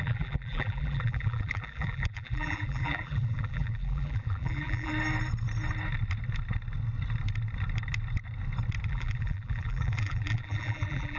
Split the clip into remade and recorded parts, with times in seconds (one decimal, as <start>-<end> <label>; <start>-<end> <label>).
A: 0.0-4.9 remade; 4.9-8.9 recorded; 8.9-11.2 remade